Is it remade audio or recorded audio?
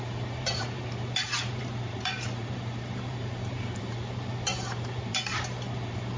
remade